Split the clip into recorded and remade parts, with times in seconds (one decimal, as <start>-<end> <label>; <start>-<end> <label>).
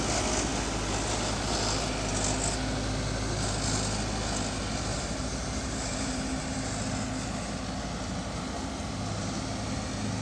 0.0-4.9 recorded; 4.9-6.7 remade; 6.7-10.2 recorded